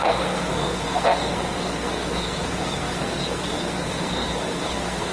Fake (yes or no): yes